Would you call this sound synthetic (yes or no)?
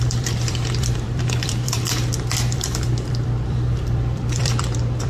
yes